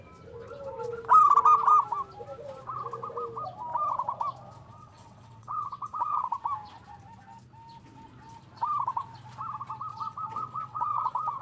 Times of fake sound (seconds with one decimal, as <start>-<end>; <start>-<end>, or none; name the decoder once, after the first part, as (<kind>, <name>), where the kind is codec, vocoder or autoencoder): 4.7-6.3 (vocoder, WaveNeXt); 9.9-11.4